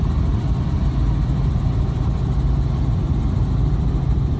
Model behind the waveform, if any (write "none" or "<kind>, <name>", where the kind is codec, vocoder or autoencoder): vocoder, BigVGAN v2